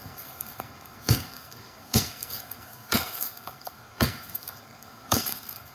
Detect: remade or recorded remade